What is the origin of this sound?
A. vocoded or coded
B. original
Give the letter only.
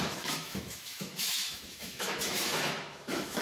A